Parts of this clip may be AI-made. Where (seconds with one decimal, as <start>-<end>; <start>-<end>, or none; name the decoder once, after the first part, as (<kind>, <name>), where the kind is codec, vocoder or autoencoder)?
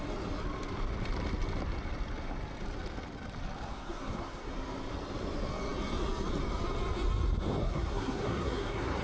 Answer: 3.7-4.5 (codec, SNAC); 7.6-9.0